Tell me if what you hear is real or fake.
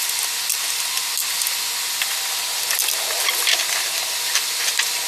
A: real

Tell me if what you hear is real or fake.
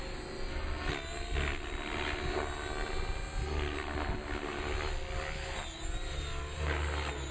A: real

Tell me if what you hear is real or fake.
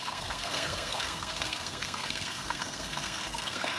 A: fake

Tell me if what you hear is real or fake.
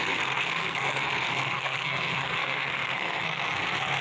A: fake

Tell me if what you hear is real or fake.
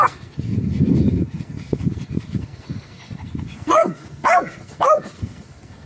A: fake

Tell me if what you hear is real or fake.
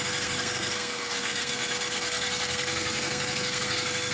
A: fake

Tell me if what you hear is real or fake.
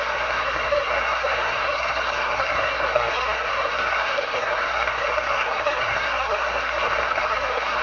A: fake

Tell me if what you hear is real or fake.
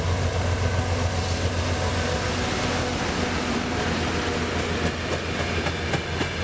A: real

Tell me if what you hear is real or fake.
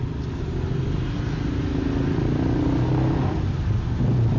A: real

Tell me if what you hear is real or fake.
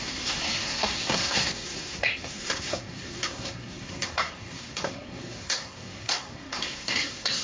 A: fake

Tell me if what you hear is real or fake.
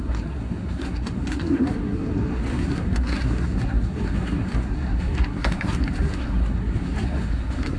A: fake